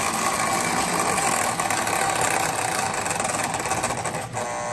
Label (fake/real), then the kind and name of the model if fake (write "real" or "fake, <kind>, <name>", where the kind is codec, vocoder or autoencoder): real